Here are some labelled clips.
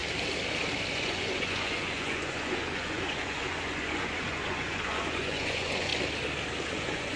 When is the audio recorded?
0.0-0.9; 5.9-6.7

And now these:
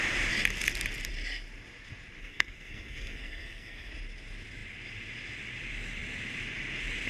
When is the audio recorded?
0.0-2.2; 3.9-7.1

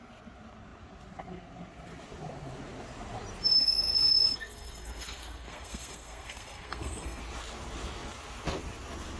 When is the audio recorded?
0.0-3.6; 7.2-9.2

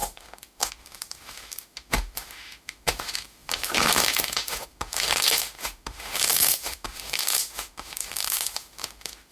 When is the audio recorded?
none

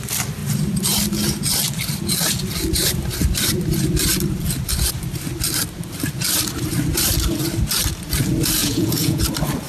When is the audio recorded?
0.0-8.6; 9.2-9.7

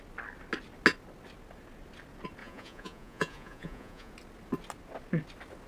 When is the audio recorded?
0.0-2.4; 4.1-5.7

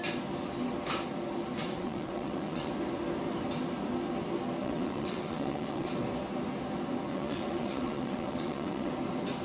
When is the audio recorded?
0.0-1.6; 2.7-4.6; 5.9-7.1; 8.9-9.4

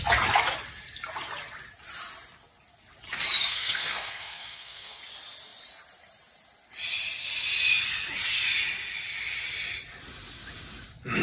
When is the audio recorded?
0.0-3.5; 5.0-11.2